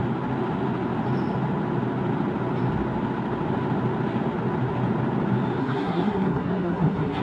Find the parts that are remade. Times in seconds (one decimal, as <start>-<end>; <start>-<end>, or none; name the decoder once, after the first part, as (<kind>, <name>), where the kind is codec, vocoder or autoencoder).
5.6-7.2 (codec, SNAC)